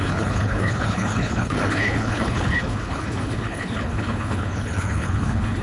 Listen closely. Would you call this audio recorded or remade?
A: remade